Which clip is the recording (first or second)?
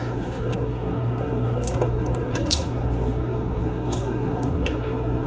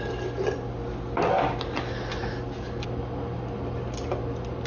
second